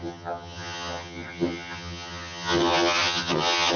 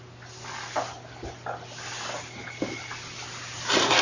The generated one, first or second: first